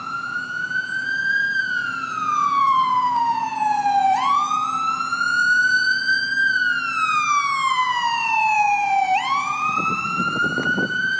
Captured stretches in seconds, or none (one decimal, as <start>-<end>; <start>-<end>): 6.6-7.7